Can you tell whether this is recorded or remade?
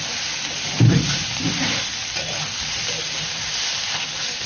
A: remade